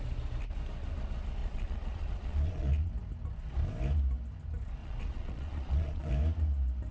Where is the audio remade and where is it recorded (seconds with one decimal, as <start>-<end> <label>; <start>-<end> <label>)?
0.0-1.4 recorded; 1.4-2.9 remade; 2.9-4.8 recorded; 4.8-6.1 remade; 6.1-6.9 recorded